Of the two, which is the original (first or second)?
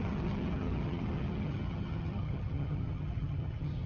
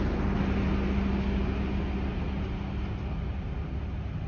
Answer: second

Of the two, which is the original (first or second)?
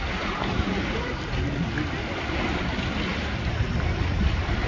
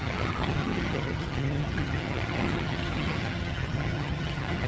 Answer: first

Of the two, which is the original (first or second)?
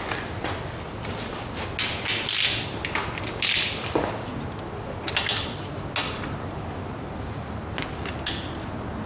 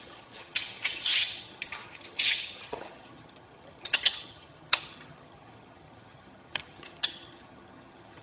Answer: first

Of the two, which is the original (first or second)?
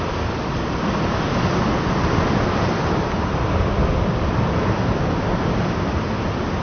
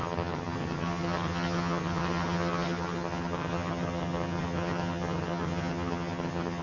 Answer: first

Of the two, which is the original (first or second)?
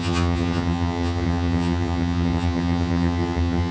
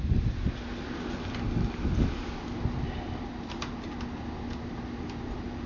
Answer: second